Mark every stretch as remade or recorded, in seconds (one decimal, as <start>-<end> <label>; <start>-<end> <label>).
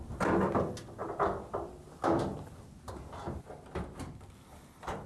0.0-5.1 recorded